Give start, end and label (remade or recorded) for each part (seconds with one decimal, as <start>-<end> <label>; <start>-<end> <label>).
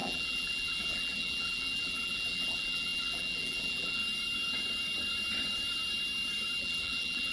0.0-4.0 remade; 4.0-6.6 recorded; 6.6-7.3 remade